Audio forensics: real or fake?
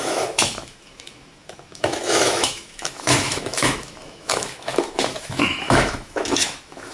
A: fake